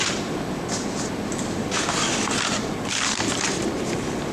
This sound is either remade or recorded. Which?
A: recorded